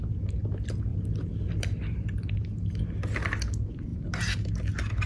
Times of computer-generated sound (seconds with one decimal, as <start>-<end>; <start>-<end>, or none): 0.9-2.9; 3.9-4.5